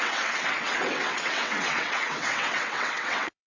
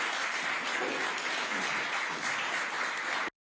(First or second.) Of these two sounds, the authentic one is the second